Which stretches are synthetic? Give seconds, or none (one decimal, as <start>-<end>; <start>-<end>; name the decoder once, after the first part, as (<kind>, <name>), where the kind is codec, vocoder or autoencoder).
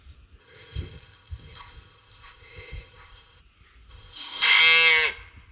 0.4-3.4 (codec, ZipCodec); 3.9-4.6